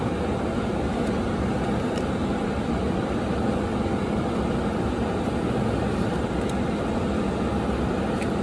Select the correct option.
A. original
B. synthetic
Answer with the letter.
A